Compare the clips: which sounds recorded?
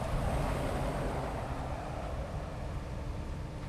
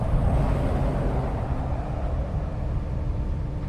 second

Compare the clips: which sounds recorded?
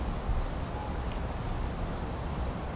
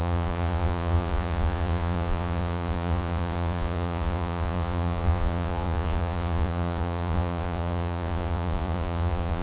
first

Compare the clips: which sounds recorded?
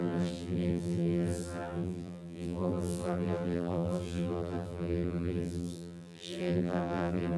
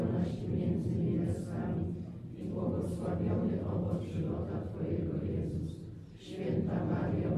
second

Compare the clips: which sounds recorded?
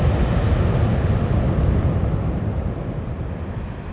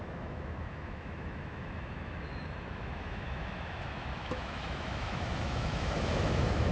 first